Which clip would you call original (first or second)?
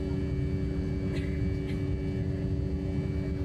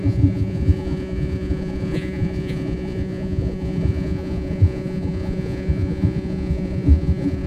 first